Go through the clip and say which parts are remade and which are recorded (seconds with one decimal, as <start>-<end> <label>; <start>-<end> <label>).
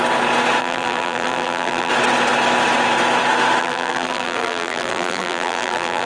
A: 0.0-0.6 recorded; 0.6-1.9 remade; 1.9-3.6 recorded; 3.6-6.1 remade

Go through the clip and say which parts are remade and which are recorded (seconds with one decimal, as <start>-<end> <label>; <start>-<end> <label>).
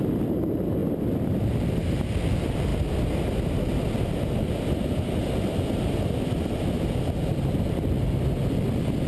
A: 0.0-9.1 recorded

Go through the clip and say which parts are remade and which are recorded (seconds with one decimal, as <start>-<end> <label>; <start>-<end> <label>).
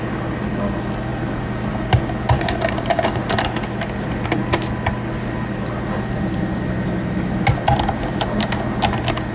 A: 0.0-9.3 recorded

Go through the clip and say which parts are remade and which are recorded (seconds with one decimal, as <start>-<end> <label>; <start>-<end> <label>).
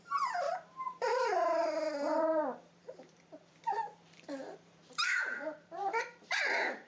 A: 0.0-6.9 remade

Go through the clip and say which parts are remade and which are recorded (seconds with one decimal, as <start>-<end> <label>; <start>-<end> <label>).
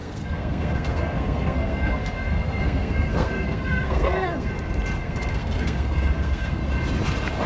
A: 0.0-4.5 remade; 4.5-5.0 recorded; 5.0-6.6 remade; 6.6-7.5 recorded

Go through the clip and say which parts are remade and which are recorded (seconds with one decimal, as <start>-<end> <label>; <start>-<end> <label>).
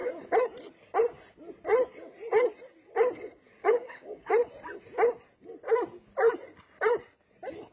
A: 0.0-3.6 recorded; 3.6-4.3 remade; 4.3-7.7 recorded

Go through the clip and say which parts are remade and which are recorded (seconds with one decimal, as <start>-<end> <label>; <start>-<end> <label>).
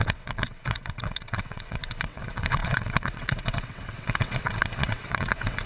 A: 0.0-5.7 remade